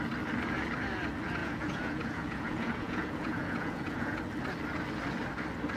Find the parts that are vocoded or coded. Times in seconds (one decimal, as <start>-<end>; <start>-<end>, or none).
1.4-4.2